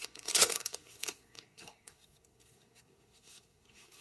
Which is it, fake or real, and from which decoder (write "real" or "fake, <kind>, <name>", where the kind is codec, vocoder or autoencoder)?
fake, codec, SNAC